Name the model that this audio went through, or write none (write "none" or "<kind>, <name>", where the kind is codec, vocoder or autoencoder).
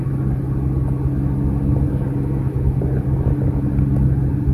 none